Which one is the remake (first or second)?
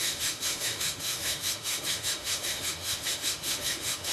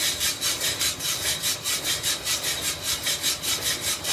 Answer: first